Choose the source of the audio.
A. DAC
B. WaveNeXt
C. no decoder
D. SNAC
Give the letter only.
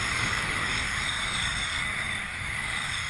A